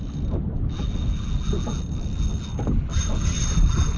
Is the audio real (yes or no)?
yes